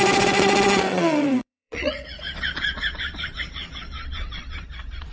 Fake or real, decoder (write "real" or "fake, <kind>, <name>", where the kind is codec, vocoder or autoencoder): fake, vocoder, Vocos